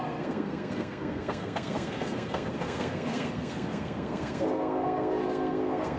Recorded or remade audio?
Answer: remade